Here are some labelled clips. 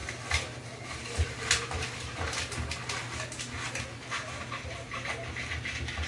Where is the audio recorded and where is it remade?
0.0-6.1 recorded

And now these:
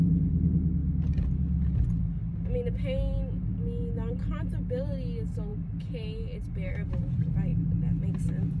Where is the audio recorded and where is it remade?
0.0-8.6 recorded

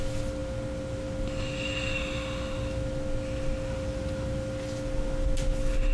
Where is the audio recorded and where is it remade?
0.0-5.9 recorded

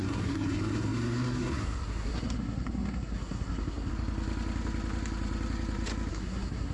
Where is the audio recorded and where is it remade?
0.0-3.9 remade; 3.9-6.1 recorded; 6.1-6.7 remade

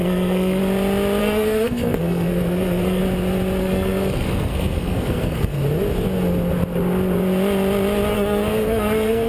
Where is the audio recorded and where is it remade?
0.0-0.6 remade; 0.6-1.2 recorded; 1.2-3.0 remade; 3.0-3.6 recorded; 3.6-5.6 remade; 5.6-8.1 recorded; 8.1-9.3 remade

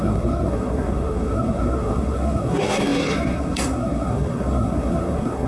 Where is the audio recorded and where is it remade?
0.0-5.5 remade